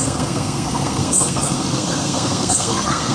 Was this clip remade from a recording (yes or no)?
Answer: yes